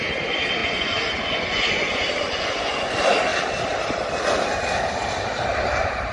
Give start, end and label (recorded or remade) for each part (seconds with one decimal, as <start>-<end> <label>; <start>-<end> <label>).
0.0-0.6 recorded; 0.6-2.9 remade; 2.9-6.1 recorded